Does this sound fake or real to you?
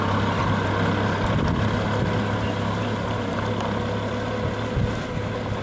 real